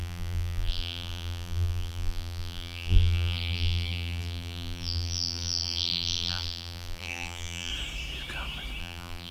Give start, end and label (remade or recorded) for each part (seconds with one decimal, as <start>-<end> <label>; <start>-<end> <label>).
0.0-7.7 remade; 7.7-8.8 recorded; 8.8-9.3 remade